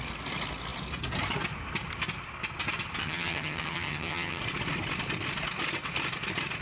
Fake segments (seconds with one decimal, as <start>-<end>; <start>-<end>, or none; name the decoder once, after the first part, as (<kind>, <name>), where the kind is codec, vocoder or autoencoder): 3.0-4.4 (vocoder, HiFi-GAN)

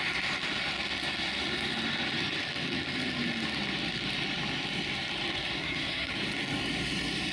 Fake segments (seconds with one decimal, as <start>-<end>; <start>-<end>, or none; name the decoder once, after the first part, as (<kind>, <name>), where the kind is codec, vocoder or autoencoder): 5.6-6.1 (codec, SNAC)

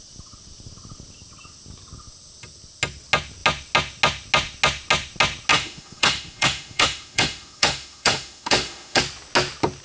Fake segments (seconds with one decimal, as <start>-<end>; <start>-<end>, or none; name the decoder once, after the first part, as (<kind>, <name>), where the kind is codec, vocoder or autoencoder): 5.5-9.0 (autoencoder, DAC-VAE)

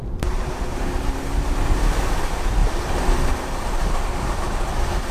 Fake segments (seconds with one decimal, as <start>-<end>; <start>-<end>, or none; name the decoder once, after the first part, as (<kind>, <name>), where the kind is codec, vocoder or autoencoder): 0.0-0.8 (vocoder, BigVGAN v2); 2.6-4.3

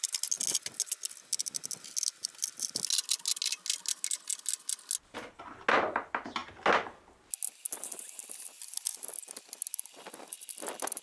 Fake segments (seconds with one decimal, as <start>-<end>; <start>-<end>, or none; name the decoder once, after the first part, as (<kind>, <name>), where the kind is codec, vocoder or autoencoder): none